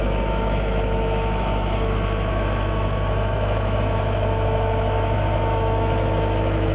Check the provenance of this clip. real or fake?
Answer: fake